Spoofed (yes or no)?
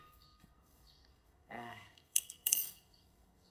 yes